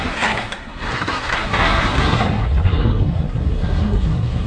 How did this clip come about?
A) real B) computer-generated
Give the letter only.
B